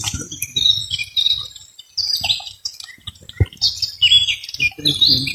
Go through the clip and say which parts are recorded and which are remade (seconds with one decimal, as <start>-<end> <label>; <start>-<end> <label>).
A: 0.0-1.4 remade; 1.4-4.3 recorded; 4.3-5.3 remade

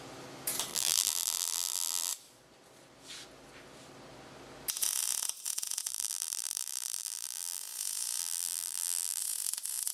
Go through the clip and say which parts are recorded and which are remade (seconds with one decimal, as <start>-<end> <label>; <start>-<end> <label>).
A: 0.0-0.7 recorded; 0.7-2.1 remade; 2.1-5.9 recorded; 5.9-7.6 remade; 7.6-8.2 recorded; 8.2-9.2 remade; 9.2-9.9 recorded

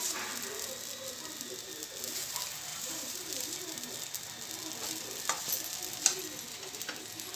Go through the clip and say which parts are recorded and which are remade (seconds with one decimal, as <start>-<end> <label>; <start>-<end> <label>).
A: 0.0-2.7 recorded; 2.7-3.9 remade; 3.9-7.4 recorded